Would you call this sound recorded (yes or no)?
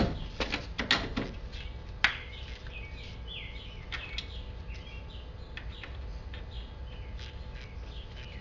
yes